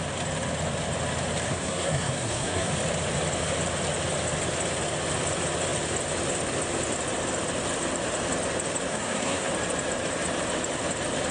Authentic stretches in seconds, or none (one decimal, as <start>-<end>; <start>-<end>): 0.0-1.5; 2.7-8.9; 9.5-11.3